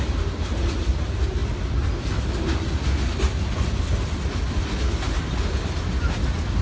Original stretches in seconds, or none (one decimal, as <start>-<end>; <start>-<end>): 0.0-6.6